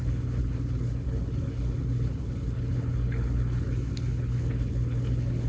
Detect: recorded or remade remade